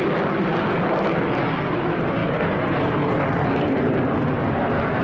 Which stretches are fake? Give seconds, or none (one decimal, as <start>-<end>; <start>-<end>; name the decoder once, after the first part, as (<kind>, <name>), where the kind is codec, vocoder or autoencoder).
none